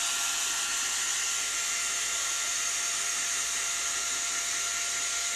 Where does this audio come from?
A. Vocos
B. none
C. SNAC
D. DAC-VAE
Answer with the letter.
B